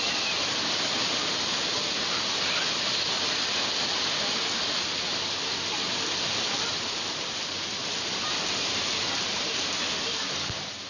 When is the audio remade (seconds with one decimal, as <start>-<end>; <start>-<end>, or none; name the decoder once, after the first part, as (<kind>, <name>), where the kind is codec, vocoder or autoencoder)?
none